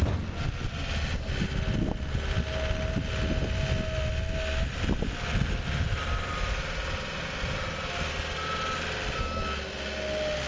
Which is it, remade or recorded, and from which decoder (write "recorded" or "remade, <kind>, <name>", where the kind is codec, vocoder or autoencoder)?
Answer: recorded